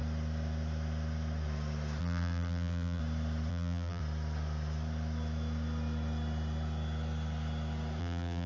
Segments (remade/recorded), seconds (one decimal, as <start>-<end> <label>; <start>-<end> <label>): 0.0-2.0 recorded; 2.0-3.0 remade; 3.0-3.5 recorded; 3.5-4.0 remade; 4.0-8.0 recorded; 8.0-8.5 remade